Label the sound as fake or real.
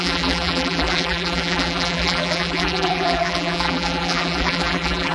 fake